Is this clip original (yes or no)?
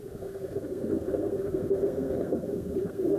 no